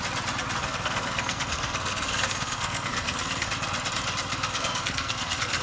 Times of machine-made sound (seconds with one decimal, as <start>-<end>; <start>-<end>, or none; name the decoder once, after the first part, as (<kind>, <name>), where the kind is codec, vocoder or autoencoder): 0.6-3.5 (codec, SNAC); 4.3-5.6